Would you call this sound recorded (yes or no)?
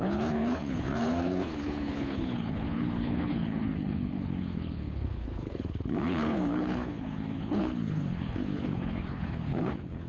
no